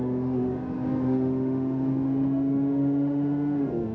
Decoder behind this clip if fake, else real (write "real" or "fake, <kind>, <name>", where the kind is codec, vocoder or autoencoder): fake, autoencoder, DAC-VAE